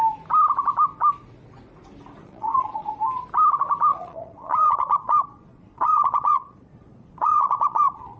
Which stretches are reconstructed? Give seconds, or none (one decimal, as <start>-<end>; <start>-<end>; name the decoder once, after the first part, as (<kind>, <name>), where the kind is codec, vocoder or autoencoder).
2.2-2.9 (vocoder, Vocos); 3.9-8.2